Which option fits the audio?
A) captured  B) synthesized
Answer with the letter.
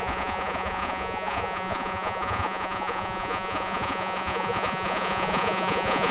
B